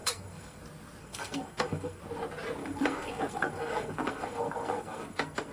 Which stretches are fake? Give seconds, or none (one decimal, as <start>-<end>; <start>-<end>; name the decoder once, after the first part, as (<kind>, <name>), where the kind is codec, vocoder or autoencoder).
0.0-0.6 (codec, SNAC); 1.0-2.0; 2.6-5.5